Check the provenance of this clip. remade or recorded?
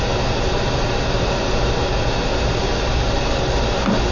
recorded